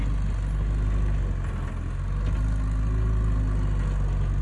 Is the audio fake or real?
real